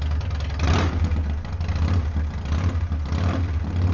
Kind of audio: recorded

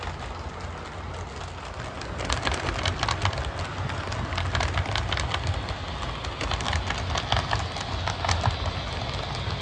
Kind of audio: recorded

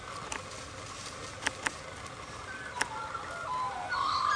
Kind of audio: recorded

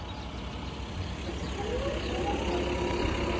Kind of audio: recorded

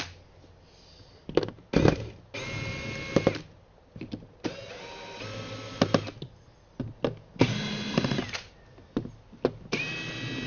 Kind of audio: recorded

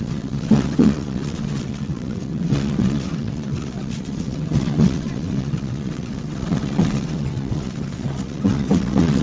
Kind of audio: remade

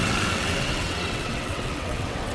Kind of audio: remade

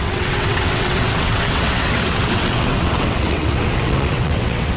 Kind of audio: remade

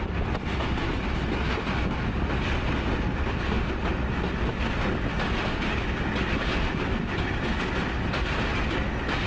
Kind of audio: recorded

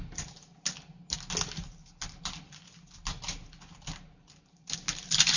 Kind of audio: recorded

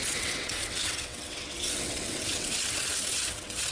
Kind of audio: remade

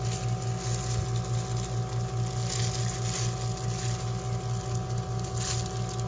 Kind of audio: recorded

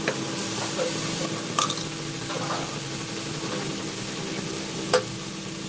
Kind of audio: recorded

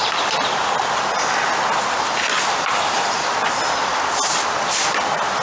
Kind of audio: recorded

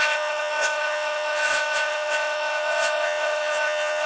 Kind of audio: remade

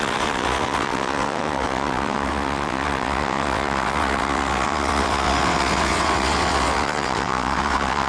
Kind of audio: remade